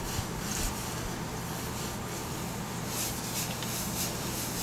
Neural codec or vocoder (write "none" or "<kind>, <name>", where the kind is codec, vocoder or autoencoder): none